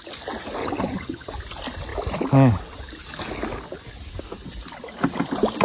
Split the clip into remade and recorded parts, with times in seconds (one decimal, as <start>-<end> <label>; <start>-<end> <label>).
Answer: 0.0-0.6 recorded; 0.6-1.3 remade; 1.3-5.6 recorded